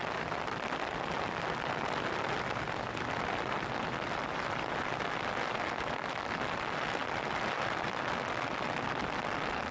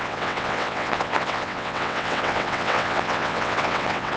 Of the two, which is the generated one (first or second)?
second